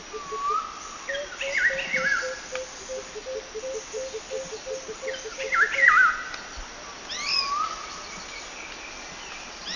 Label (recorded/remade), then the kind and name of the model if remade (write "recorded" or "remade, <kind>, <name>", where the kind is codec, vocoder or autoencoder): recorded